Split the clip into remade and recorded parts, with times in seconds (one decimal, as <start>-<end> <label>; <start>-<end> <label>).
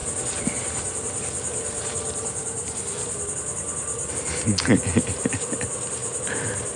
0.0-4.1 remade; 4.1-6.0 recorded; 6.0-6.8 remade